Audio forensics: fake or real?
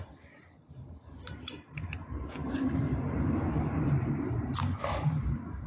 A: fake